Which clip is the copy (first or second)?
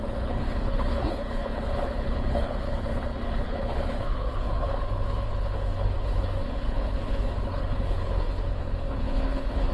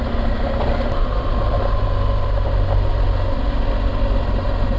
first